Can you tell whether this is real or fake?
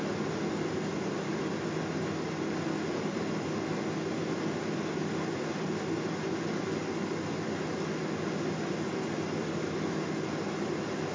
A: real